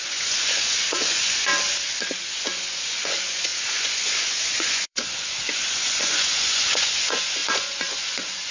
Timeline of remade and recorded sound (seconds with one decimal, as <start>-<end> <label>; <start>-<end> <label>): 0.0-1.5 remade; 1.5-2.3 recorded; 2.3-8.5 remade